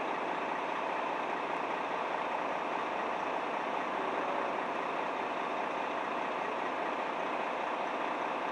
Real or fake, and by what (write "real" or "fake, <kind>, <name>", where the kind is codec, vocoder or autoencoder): real